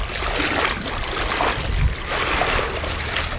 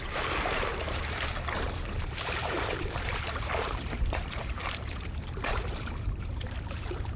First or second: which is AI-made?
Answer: second